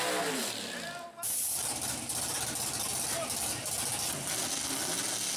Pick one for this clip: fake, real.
real